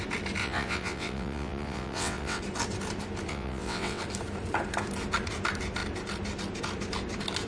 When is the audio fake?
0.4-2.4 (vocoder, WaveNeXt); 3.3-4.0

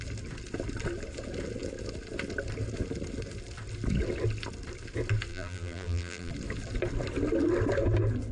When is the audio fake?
5.3-6.3 (vocoder, BigVGAN v2)

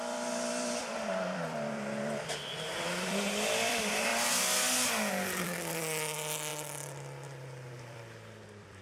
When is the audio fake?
0.0-4.1 (vocoder, BigVGAN v2); 5.1-6.5; 7.8-8.8